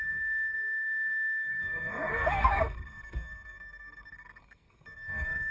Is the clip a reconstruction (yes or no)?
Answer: yes